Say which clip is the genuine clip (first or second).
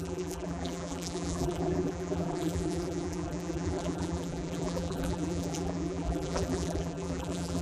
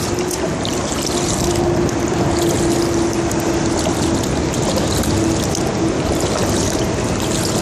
second